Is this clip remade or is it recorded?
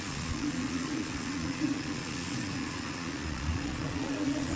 remade